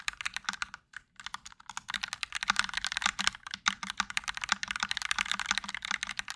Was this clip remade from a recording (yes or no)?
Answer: no